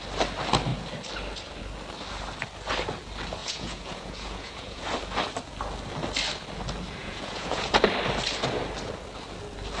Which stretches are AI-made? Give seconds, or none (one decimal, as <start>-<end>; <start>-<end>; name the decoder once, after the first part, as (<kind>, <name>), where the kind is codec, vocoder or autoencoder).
3.4-4.8 (vocoder, Vocos); 7.0-7.8